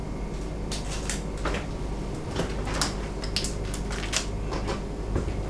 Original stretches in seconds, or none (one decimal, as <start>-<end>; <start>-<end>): 0.0-5.5